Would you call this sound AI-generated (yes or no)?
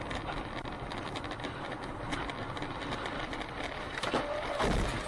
no